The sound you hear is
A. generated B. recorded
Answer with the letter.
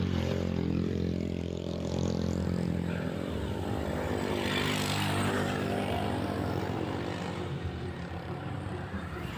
A